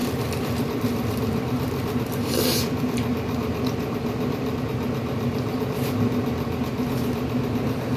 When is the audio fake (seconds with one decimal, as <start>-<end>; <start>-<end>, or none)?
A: 0.0-4.6